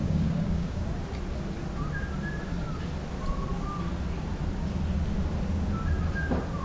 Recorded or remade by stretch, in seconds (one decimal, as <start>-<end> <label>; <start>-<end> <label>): 0.0-0.8 remade; 0.8-6.6 recorded

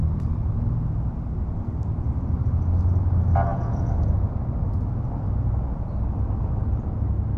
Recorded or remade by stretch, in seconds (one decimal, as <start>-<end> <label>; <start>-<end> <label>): 0.0-3.5 recorded; 3.5-4.4 remade; 4.4-7.4 recorded

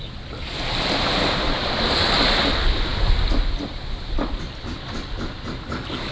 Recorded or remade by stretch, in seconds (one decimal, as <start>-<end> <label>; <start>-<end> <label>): 0.0-6.1 recorded

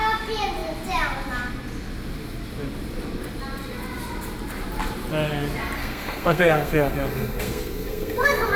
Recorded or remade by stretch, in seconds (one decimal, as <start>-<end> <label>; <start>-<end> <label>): 0.0-5.8 recorded; 5.8-8.6 remade